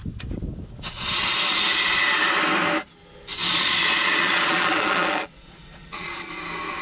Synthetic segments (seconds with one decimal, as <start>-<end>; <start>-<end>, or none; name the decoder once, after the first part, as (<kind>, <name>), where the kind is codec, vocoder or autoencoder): 3.3-6.3 (vocoder, Vocos)